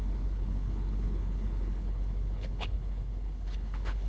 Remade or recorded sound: remade